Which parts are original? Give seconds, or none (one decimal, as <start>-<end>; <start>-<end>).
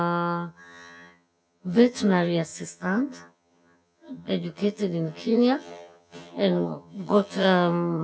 none